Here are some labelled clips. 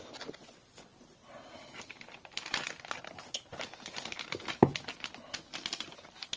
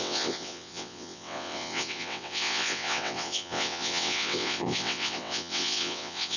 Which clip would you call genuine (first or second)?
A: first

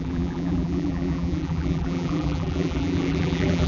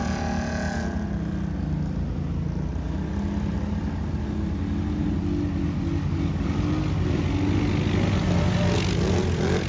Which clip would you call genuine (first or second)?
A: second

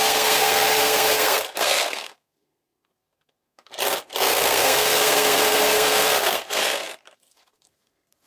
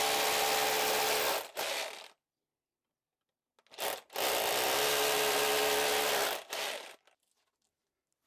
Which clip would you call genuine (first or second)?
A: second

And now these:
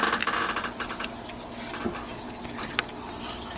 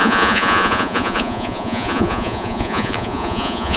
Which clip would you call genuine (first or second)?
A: first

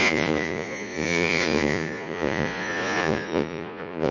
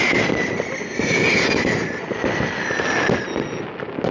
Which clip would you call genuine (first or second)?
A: second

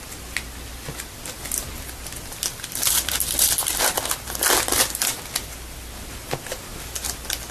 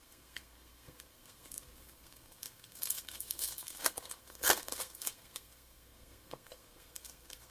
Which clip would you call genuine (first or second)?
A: first